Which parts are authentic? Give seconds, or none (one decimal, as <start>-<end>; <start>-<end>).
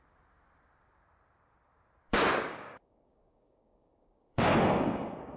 0.0-2.1